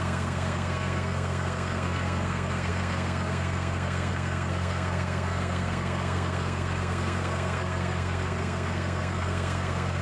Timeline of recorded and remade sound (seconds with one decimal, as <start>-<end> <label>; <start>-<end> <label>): 0.0-10.0 remade